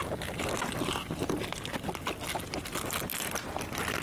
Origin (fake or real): real